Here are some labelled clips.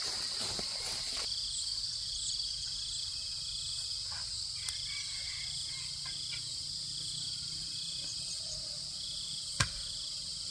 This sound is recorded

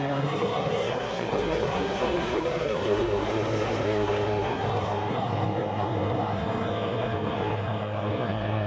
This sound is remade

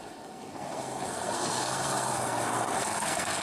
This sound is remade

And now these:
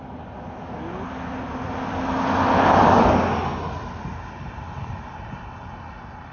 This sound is recorded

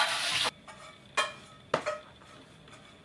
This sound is recorded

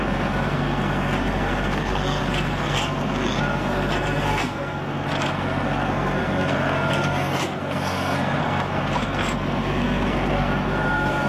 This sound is remade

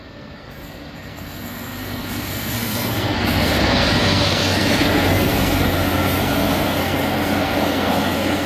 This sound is remade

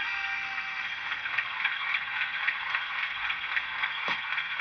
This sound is remade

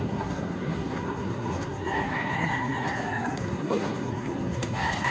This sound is remade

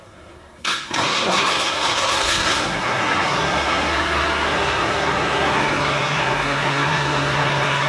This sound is remade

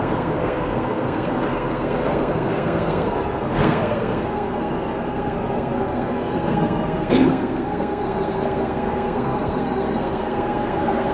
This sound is remade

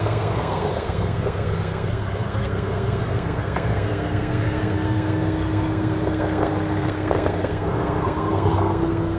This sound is remade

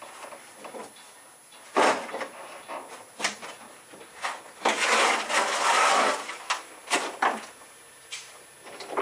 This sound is recorded